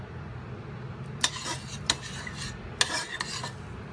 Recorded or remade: recorded